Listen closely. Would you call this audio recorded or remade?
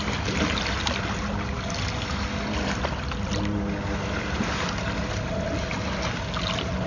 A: recorded